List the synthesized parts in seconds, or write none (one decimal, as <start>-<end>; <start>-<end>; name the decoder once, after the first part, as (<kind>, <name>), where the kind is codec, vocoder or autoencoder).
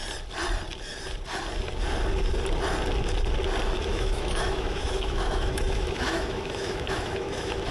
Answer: 3.9-7.7 (autoencoder, DAC-VAE)